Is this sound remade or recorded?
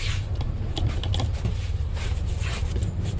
recorded